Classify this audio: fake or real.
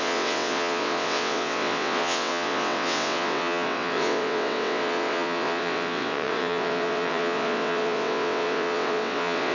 fake